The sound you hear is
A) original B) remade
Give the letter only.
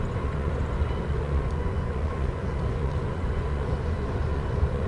B